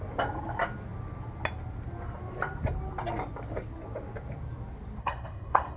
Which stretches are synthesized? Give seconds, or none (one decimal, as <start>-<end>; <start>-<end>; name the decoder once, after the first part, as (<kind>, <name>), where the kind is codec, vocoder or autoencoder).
5.0-5.8 (codec, SNAC)